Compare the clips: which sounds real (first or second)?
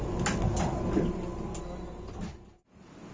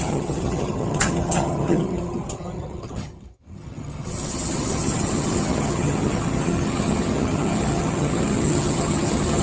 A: first